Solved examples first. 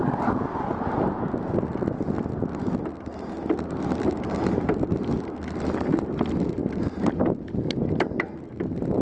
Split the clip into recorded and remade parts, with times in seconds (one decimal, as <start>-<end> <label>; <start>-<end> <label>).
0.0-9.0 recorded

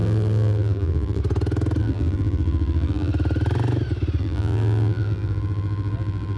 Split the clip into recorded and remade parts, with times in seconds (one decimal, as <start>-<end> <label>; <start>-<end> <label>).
0.0-1.2 remade; 1.2-1.8 recorded; 1.8-3.1 remade; 3.1-4.2 recorded; 4.2-6.4 remade

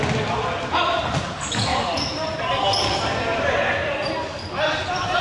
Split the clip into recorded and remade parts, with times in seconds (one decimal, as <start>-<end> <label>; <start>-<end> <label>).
0.0-5.2 recorded